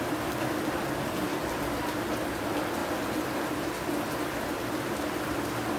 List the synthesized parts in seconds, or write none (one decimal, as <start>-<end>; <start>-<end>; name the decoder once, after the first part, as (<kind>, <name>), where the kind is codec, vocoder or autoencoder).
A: none